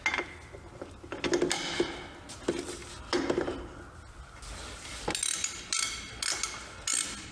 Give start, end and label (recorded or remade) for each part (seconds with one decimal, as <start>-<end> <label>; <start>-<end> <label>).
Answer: 0.0-7.3 recorded